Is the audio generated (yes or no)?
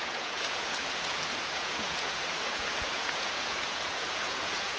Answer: yes